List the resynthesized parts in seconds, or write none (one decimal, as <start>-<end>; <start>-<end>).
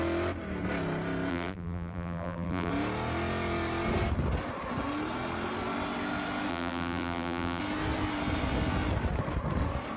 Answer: 1.3-2.7; 6.5-7.6